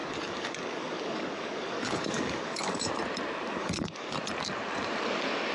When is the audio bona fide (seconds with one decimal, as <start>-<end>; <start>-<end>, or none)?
2.9-3.6; 4.1-5.5